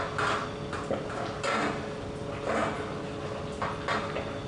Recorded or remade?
recorded